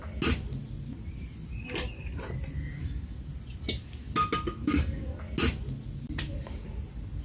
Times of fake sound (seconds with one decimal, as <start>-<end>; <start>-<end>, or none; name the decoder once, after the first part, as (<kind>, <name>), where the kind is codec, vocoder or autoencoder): 2.8-3.3 (codec, DAC); 4.6-5.2